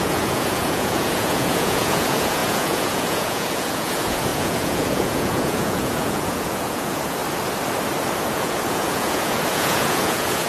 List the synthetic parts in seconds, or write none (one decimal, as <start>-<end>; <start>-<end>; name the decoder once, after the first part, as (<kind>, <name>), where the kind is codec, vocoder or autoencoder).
0.0-7.2 (vocoder, Vocos); 8.3-10.5